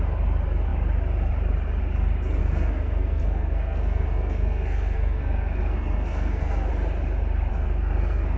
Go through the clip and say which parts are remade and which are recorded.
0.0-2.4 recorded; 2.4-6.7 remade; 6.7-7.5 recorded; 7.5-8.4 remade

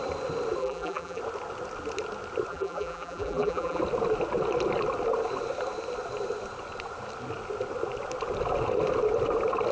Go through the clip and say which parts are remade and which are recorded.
0.0-0.6 recorded; 0.6-1.2 remade; 1.2-2.5 recorded; 2.5-3.8 remade; 3.8-9.7 recorded

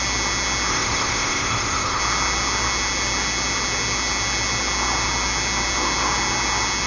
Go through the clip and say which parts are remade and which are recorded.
0.0-0.7 recorded; 0.7-2.0 remade; 2.0-6.9 recorded

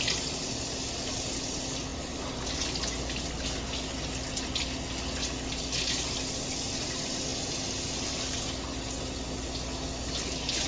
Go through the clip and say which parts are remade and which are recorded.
0.0-10.7 recorded

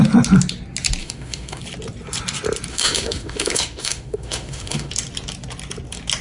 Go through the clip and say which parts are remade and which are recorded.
0.0-1.0 recorded; 1.0-1.6 remade; 1.6-2.7 recorded; 2.7-4.9 remade; 4.9-6.2 recorded

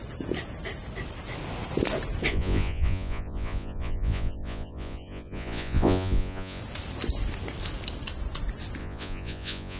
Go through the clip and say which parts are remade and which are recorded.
0.0-2.3 recorded; 2.3-6.6 remade; 6.6-8.8 recorded; 8.8-9.8 remade

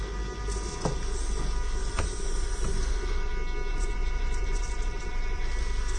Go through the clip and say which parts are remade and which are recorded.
0.0-1.8 recorded; 1.8-3.3 remade; 3.3-3.7 recorded; 3.7-5.5 remade; 5.5-6.0 recorded